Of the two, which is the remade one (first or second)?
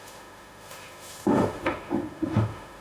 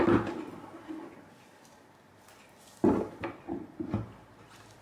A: first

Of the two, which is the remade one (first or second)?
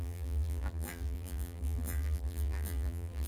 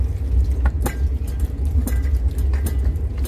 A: first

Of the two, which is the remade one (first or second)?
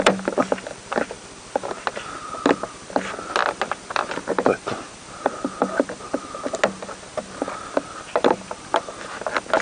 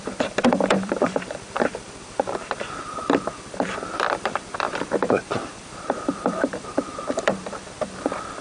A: second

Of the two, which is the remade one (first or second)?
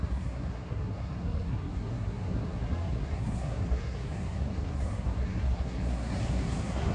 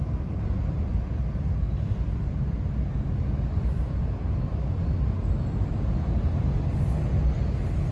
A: first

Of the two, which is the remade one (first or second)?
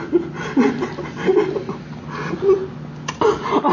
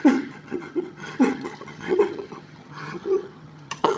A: second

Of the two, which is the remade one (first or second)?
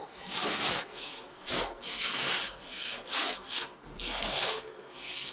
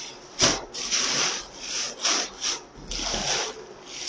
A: first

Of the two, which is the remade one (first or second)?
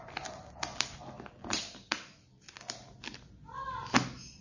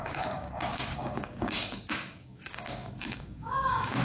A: second